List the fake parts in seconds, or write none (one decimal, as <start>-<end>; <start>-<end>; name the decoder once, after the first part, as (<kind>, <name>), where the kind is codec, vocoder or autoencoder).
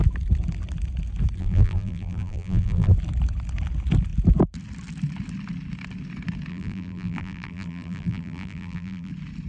1.4-2.9 (vocoder, BigVGAN v2); 6.5-9.1